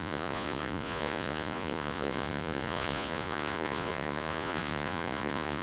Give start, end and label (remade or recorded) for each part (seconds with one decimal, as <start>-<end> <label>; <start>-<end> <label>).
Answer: 0.0-5.6 remade